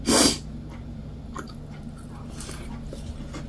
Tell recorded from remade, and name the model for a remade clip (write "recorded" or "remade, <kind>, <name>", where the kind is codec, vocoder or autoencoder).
recorded